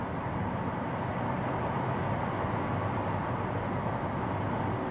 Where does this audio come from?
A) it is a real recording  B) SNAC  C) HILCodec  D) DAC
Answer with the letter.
A